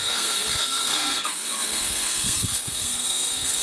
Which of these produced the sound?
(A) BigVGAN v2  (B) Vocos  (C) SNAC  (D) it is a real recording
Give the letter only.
C